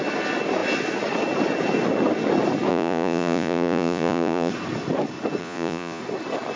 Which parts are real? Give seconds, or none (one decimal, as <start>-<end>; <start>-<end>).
0.0-2.7; 4.5-5.4; 6.0-6.6